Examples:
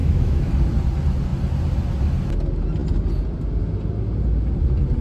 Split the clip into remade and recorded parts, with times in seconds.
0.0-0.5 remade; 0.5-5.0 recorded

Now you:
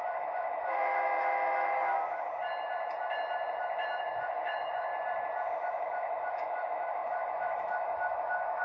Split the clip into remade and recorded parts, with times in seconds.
0.0-2.4 remade; 2.4-4.0 recorded; 4.0-4.9 remade; 4.9-5.5 recorded; 5.5-8.6 remade